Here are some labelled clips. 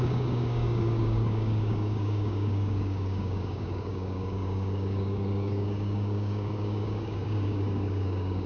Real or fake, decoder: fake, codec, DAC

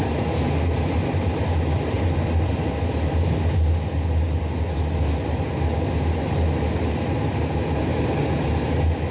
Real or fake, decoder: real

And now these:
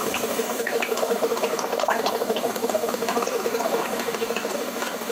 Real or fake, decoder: fake, codec, DAC